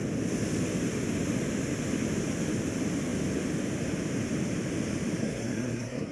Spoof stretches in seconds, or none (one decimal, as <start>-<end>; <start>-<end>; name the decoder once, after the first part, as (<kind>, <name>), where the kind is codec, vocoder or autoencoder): 5.2-6.1 (codec, SNAC)